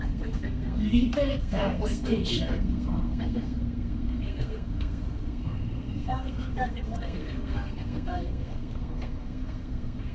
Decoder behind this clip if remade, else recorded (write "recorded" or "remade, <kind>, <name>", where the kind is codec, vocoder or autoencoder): remade, codec, SNAC